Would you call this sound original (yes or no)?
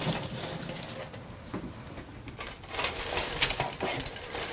yes